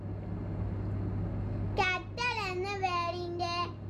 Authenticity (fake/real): real